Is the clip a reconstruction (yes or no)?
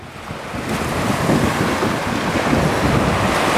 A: no